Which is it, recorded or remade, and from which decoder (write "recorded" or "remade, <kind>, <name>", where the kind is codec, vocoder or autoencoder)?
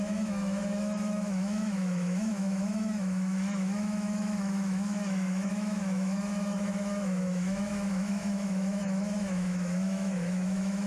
remade, autoencoder, DAC-VAE